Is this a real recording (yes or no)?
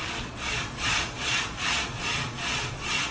no